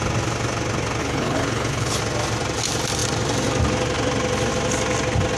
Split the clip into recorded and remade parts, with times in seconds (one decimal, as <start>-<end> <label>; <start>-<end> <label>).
0.0-1.0 recorded; 1.0-2.0 remade; 2.0-5.4 recorded

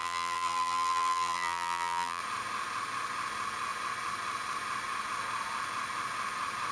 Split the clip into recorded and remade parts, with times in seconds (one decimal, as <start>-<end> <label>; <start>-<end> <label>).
0.0-2.2 remade; 2.2-6.7 recorded

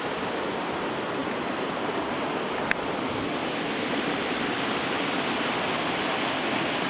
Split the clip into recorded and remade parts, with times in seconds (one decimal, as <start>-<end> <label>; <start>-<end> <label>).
0.0-1.2 recorded; 1.2-2.0 remade; 2.0-3.4 recorded; 3.4-5.6 remade; 5.6-6.9 recorded

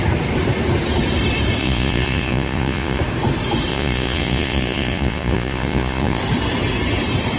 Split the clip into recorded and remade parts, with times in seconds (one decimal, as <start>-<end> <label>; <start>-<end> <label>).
0.0-1.6 recorded; 1.6-3.0 remade; 3.0-3.7 recorded; 3.7-6.2 remade; 6.2-7.4 recorded